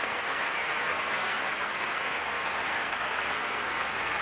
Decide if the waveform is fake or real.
fake